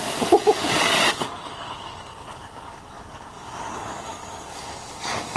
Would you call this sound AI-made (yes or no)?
yes